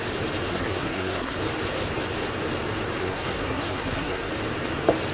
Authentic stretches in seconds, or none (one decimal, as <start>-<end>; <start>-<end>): 0.0-0.5; 1.4-3.0; 4.3-5.1

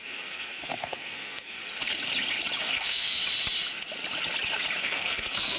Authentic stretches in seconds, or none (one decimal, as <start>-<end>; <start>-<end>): 1.6-2.6; 3.2-4.8

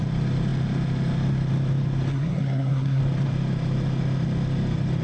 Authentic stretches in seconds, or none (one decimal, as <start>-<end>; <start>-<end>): 0.0-2.1; 3.0-5.0